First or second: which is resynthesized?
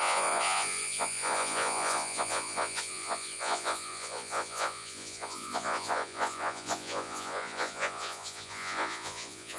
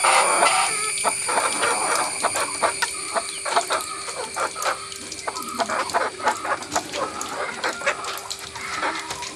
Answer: first